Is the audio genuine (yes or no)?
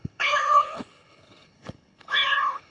no